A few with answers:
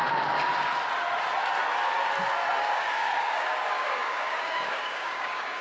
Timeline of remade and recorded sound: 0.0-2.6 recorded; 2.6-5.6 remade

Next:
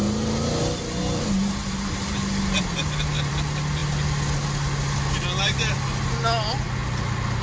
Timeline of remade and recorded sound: 0.0-7.4 recorded